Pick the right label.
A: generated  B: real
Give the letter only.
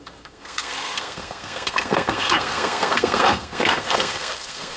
A